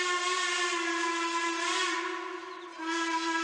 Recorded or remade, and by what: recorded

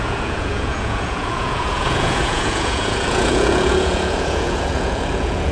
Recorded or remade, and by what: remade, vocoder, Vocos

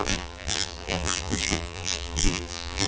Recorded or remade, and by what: remade, vocoder, BigVGAN v2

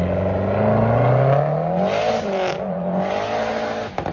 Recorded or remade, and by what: recorded